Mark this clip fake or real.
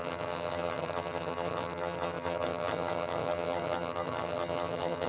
fake